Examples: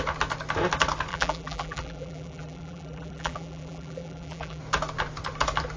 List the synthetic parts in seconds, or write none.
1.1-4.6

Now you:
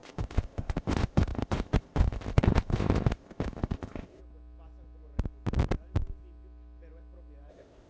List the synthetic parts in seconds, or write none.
0.0-4.2; 7.5-7.9

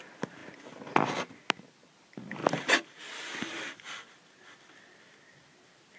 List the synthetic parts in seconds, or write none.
none